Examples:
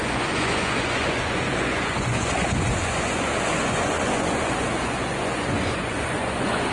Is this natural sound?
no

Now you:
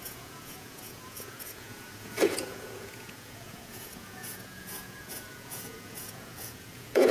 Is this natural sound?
no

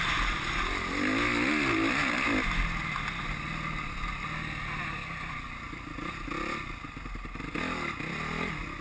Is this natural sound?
yes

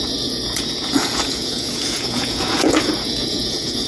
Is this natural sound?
no